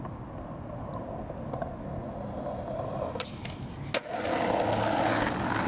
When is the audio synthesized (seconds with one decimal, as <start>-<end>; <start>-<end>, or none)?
none